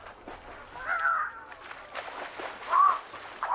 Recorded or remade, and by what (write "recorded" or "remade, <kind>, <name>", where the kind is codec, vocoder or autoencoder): recorded